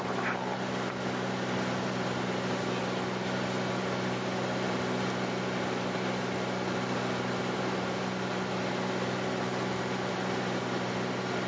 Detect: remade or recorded recorded